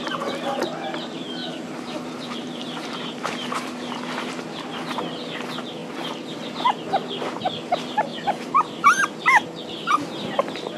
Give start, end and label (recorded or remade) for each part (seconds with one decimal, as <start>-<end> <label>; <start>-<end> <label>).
0.0-1.4 recorded; 1.4-4.3 remade; 4.3-8.1 recorded; 8.1-9.0 remade; 9.0-10.8 recorded